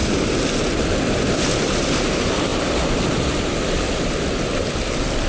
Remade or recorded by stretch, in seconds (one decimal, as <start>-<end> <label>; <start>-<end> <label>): 0.0-5.3 recorded